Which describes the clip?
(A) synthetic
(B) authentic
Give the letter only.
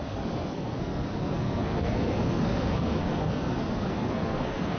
A